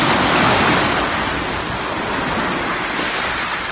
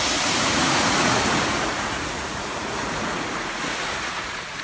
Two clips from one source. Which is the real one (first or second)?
first